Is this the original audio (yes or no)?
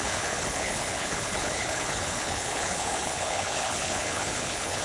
no